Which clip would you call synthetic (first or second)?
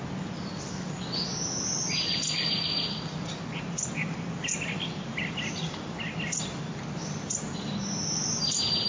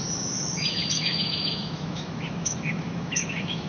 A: second